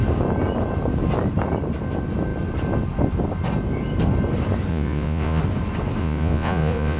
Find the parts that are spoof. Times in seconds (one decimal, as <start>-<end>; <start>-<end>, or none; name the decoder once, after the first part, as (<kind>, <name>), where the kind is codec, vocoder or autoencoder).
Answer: 4.7-5.4 (vocoder, Vocos); 6.0-7.0